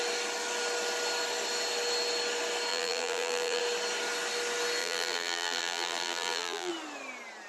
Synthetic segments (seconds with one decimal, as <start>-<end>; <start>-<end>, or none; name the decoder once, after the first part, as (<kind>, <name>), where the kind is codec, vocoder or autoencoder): 2.7-3.6 (vocoder, BigVGAN v2); 4.8-6.7